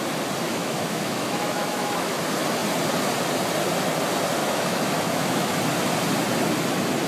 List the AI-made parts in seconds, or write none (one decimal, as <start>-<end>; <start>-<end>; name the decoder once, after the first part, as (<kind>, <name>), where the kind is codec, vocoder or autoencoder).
0.5-2.2 (autoencoder, DAC-VAE); 4.4-5.6